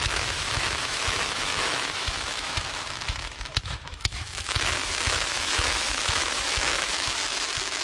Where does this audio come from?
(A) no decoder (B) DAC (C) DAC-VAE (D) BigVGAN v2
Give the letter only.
C